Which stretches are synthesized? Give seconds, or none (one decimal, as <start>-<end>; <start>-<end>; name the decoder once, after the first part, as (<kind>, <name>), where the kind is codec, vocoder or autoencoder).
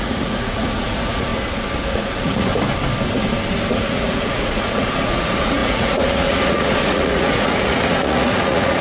0.0-1.3 (vocoder, Vocos); 1.9-2.5; 3.7-8.8